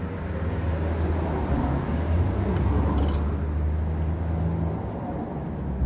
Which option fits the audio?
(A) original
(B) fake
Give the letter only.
A